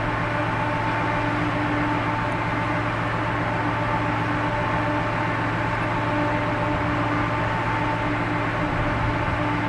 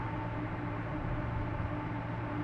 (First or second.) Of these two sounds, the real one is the first